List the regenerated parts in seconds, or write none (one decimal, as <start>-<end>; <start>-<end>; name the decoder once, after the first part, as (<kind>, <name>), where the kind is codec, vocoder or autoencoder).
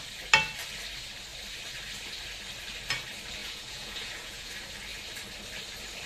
3.4-4.5 (vocoder, Vocos)